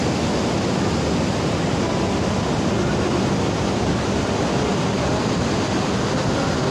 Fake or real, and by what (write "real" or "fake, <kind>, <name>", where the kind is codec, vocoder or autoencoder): real